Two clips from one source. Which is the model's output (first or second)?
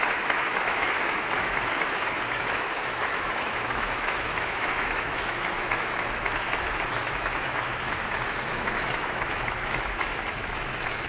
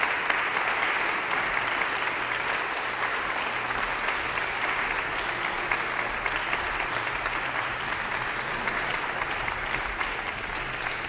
first